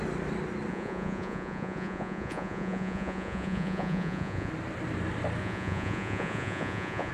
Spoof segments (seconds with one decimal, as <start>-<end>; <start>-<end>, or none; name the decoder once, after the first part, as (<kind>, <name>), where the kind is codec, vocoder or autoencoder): 0.7-4.5 (vocoder, Vocos); 5.4-7.1